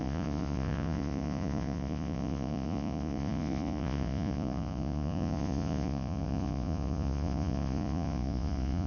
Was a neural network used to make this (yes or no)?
yes